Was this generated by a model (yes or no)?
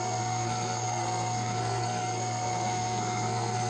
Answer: yes